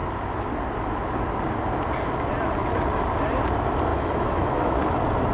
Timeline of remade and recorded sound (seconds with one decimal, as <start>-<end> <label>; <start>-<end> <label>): 0.0-3.9 recorded; 3.9-4.8 remade; 4.8-5.3 recorded